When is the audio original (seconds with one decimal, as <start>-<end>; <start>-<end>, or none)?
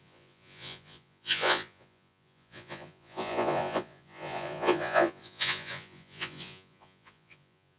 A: none